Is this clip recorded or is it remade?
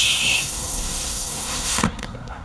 remade